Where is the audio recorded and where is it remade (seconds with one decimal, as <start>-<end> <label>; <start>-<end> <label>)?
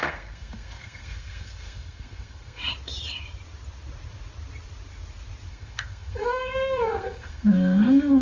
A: 0.0-2.6 remade; 2.6-5.5 recorded; 5.5-8.2 remade